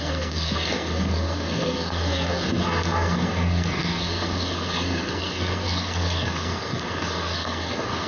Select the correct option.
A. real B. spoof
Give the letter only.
B